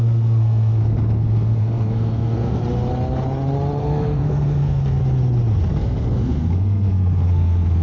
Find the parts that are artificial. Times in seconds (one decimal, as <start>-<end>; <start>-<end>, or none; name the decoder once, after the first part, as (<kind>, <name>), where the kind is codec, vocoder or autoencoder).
0.0-2.6 (codec, SNAC); 3.8-5.0; 5.7-7.8